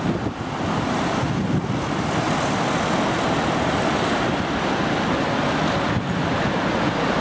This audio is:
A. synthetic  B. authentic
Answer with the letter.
B